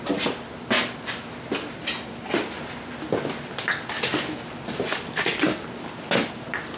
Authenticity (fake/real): real